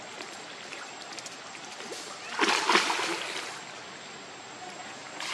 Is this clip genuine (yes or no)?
yes